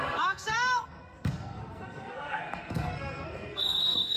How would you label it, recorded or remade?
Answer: remade